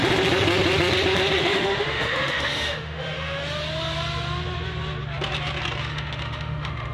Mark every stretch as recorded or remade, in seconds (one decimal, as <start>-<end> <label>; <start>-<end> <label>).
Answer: 0.0-1.4 recorded; 1.4-3.4 remade; 3.4-5.8 recorded; 5.8-6.9 remade